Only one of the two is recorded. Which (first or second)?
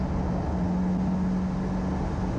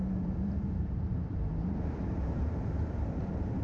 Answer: first